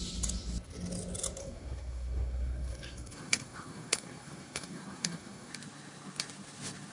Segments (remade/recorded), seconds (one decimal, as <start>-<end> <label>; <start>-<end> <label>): 0.0-1.4 recorded; 1.4-5.5 remade; 5.5-6.9 recorded